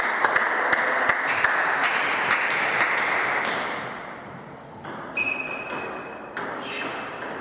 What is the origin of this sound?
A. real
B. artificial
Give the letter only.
A